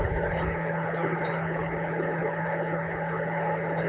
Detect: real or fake fake